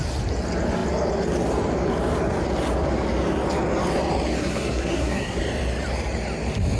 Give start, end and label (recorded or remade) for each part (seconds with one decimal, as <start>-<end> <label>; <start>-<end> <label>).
0.0-4.4 recorded; 4.4-5.4 remade; 5.4-6.8 recorded